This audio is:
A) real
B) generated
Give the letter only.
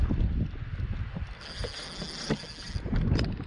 A